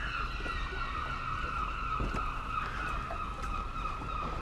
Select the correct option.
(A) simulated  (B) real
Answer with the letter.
B